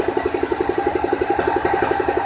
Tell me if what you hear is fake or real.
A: fake